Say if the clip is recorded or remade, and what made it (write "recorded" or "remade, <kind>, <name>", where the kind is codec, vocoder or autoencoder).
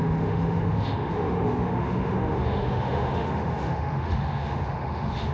remade, autoencoder, DAC-VAE